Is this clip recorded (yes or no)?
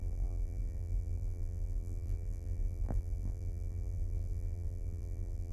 no